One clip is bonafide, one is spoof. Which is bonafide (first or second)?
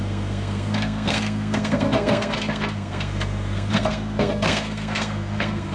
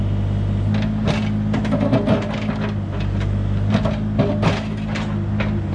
second